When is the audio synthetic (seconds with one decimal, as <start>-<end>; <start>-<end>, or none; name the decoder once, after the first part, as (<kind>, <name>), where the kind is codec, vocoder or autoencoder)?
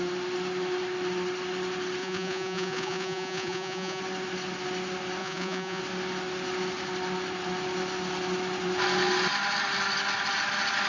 2.0-4.0 (vocoder, Vocos); 5.2-5.8